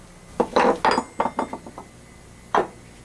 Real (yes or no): yes